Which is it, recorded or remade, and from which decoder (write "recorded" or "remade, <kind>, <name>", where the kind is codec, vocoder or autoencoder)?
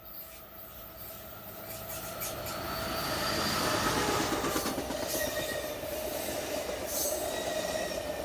recorded